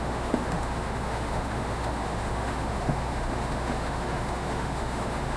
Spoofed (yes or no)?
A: yes